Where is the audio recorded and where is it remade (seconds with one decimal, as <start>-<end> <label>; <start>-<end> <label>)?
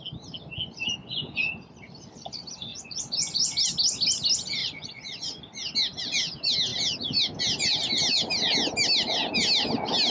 0.0-1.0 recorded; 1.0-1.5 remade; 1.5-2.7 recorded; 2.7-3.6 remade; 3.6-4.6 recorded; 4.6-5.4 remade; 5.4-10.1 recorded